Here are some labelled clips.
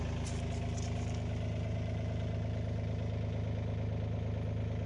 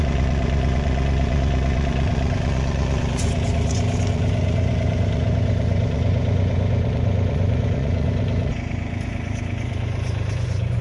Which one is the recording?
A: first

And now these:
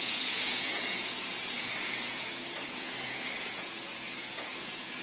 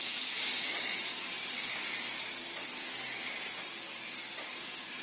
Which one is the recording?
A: second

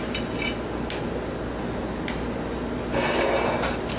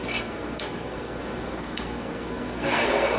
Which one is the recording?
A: first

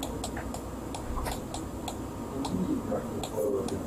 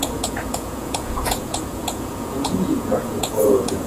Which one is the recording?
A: first